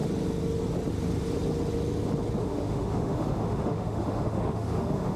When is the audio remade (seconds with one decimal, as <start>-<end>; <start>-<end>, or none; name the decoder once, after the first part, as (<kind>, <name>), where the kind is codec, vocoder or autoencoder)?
2.4-5.2 (autoencoder, DAC-VAE)